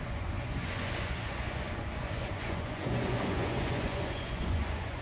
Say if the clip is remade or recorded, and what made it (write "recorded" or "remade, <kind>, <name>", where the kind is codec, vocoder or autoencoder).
remade, vocoder, Vocos